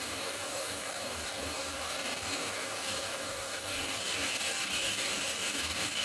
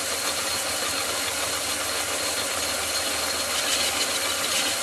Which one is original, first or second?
second